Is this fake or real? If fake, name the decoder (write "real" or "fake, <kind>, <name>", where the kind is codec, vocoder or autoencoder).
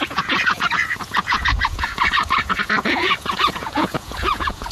fake, vocoder, Vocos